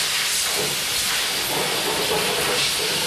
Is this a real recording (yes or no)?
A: yes